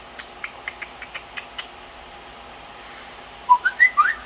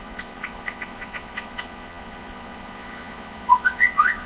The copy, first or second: second